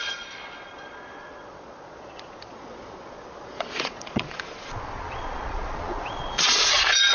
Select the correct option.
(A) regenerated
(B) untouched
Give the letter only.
A